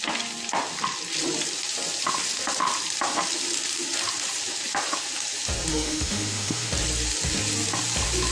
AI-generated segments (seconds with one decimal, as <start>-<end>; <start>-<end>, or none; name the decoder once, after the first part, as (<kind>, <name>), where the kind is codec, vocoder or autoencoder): 5.7-6.7 (autoencoder, DAC-VAE)